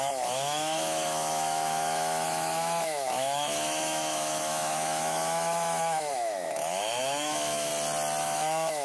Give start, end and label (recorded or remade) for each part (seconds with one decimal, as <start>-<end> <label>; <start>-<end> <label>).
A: 0.0-7.7 remade; 7.7-8.2 recorded; 8.2-8.8 remade